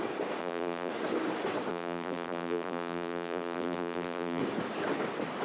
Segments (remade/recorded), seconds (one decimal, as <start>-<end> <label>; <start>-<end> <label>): 0.0-0.4 recorded; 0.4-0.9 remade; 0.9-1.7 recorded; 1.7-4.4 remade; 4.4-5.4 recorded